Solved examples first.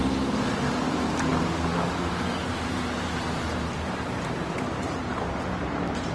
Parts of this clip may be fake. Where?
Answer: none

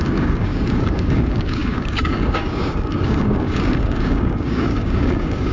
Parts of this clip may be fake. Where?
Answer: 0.0-5.5 (codec, DAC)

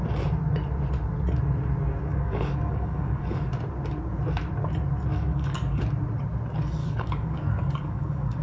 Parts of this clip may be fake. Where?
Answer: 2.1-3.5 (codec, DAC); 5.1-5.8; 6.8-8.4